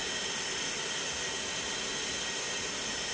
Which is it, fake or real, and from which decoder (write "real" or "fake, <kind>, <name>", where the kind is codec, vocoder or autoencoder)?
real